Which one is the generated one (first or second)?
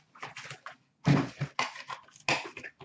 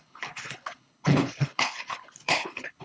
second